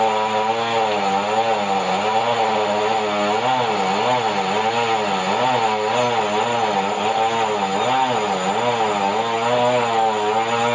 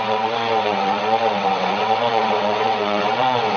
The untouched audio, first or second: first